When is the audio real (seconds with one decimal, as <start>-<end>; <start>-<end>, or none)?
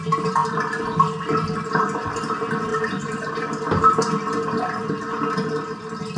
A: 0.0-2.7; 3.3-6.2